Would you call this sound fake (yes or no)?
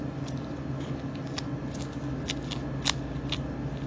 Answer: no